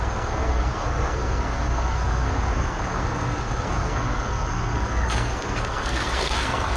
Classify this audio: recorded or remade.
remade